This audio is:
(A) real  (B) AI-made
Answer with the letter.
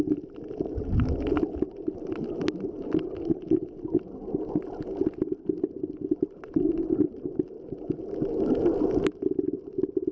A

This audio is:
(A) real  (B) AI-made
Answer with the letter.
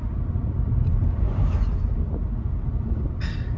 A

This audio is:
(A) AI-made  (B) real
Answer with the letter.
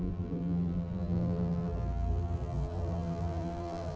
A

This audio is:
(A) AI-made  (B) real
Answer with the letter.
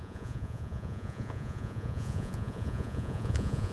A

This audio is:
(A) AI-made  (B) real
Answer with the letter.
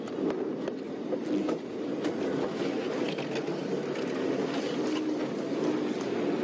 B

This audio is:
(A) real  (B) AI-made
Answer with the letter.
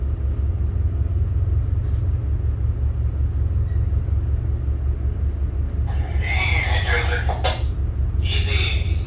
A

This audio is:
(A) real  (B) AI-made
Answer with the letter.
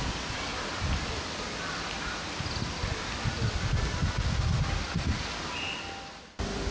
A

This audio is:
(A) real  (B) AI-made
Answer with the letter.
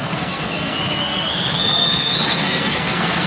B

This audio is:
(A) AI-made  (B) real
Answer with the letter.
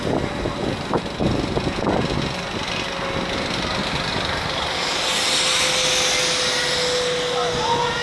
B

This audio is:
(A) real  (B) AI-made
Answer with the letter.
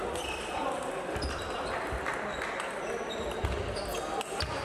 A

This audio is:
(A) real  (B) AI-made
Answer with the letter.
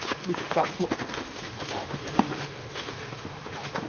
B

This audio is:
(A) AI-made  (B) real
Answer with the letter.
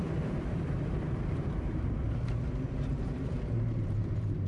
A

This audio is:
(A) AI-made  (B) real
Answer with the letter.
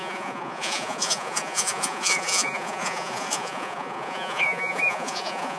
A